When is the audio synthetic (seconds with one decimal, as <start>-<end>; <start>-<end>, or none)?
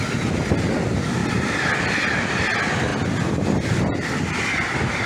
none